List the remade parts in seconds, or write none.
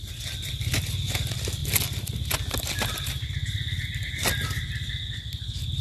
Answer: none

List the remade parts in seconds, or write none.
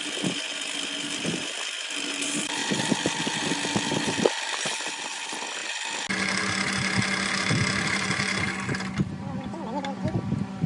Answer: 0.0-2.6; 3.2-5.6; 7.8-10.7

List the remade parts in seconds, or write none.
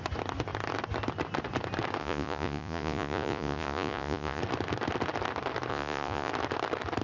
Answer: 2.0-4.4; 5.7-6.3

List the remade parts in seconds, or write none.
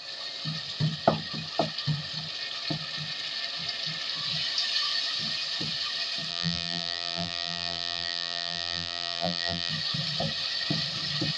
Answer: 6.3-9.7